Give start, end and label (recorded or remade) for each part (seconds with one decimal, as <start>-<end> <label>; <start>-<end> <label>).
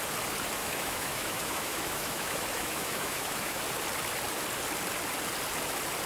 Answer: 0.0-0.6 recorded; 0.6-3.6 remade; 3.6-6.1 recorded